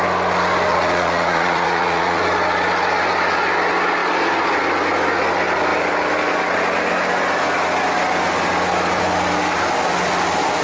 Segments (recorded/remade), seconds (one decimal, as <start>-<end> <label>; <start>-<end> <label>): 0.0-0.7 recorded; 0.7-2.2 remade; 2.2-10.6 recorded